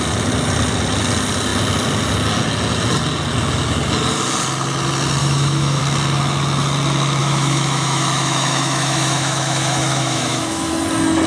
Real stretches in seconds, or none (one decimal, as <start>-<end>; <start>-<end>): 0.0-5.2; 5.8-7.2; 10.7-11.3